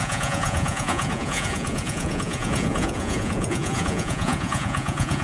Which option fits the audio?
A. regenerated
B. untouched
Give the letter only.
A